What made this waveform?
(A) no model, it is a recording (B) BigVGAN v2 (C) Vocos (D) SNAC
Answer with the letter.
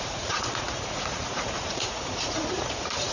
C